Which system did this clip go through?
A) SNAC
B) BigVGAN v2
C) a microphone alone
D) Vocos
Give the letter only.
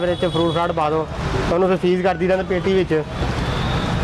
C